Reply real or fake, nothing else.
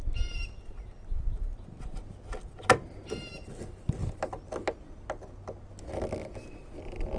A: real